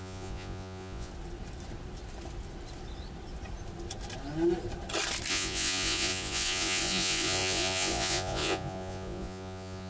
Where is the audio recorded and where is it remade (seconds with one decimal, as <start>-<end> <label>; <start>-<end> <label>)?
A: 0.0-1.1 remade; 1.1-5.3 recorded; 5.3-9.9 remade